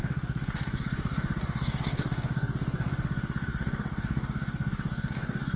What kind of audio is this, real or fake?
fake